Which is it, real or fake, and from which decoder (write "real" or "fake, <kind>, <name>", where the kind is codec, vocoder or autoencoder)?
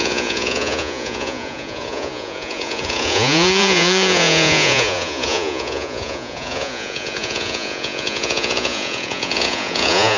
fake, vocoder, Vocos